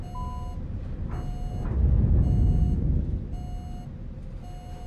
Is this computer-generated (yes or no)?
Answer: no